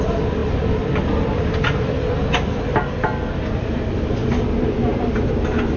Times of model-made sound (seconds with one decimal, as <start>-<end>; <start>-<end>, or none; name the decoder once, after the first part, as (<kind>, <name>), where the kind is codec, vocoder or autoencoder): none

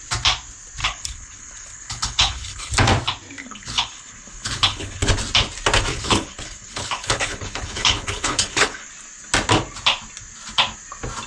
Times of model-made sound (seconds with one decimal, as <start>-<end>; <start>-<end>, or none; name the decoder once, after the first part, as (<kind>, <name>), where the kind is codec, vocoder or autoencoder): 0.8-2.7 (codec, HILCodec); 3.4-5.1; 5.9-8.9

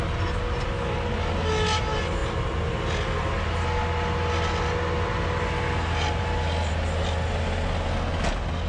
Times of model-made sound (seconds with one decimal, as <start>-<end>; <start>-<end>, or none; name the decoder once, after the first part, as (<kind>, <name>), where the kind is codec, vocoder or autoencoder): none

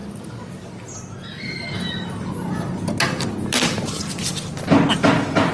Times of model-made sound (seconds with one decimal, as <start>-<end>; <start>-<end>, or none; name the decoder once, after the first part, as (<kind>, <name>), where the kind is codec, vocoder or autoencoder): none

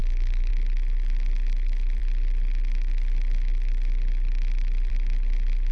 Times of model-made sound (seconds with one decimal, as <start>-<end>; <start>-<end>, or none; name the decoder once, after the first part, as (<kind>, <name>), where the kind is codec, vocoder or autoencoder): 0.0-0.5 (codec, HILCodec)

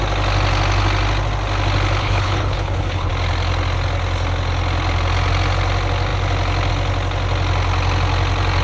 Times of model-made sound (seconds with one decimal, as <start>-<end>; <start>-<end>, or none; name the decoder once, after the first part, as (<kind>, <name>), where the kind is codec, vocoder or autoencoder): 2.0-3.1 (codec, HILCodec)

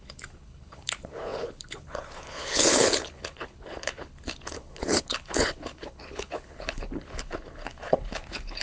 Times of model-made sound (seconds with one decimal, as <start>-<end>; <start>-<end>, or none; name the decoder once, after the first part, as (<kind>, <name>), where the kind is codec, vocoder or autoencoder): 0.0-8.6 (codec, HILCodec)

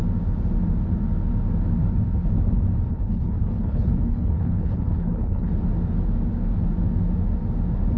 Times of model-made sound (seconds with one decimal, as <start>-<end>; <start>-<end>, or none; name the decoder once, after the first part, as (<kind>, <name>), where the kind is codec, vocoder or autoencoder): 2.9-5.5 (codec, HILCodec)